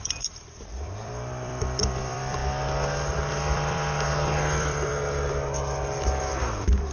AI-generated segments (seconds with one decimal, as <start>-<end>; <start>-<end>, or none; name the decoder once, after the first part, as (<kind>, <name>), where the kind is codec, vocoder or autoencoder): 0.0-2.4 (vocoder, BigVGAN v2); 3.1-4.9; 6.3-6.9